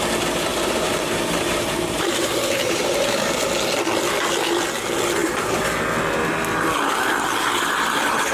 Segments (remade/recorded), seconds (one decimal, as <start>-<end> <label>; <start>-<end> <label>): 0.0-0.5 recorded; 0.5-3.4 remade; 3.4-5.2 recorded; 5.2-5.8 remade; 5.8-8.3 recorded